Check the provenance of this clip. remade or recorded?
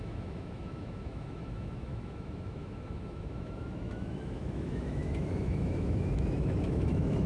remade